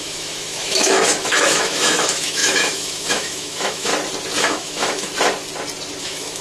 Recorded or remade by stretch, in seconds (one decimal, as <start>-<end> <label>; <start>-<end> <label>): 0.0-3.9 remade; 3.9-4.4 recorded; 4.4-5.1 remade; 5.1-6.0 recorded; 6.0-6.4 remade